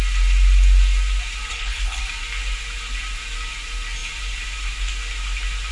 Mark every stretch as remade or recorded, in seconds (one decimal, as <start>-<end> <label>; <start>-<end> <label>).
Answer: 0.0-1.5 recorded; 1.5-2.0 remade; 2.0-5.7 recorded

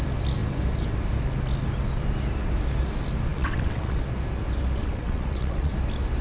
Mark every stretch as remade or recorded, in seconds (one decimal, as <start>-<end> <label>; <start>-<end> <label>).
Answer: 0.0-3.3 recorded; 3.3-4.0 remade; 4.0-4.8 recorded; 4.8-5.7 remade; 5.7-6.2 recorded

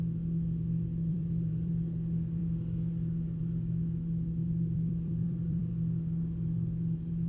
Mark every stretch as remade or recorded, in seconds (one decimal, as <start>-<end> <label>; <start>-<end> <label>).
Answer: 0.0-1.1 recorded; 1.1-1.7 remade; 1.7-4.4 recorded; 4.4-5.7 remade; 5.7-7.3 recorded

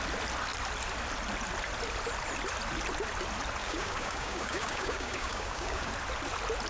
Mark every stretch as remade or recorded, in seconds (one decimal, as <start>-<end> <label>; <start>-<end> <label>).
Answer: 0.0-3.6 recorded; 3.6-5.9 remade; 5.9-6.7 recorded

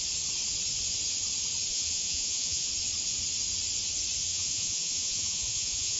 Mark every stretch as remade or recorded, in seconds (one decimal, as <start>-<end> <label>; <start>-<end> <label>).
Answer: 0.0-1.7 recorded; 1.7-2.7 remade; 2.7-4.3 recorded; 4.3-6.0 remade

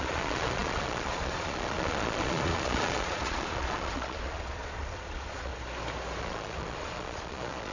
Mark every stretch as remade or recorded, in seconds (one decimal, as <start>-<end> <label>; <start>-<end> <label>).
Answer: 0.0-5.5 remade; 5.5-6.2 recorded; 6.2-7.7 remade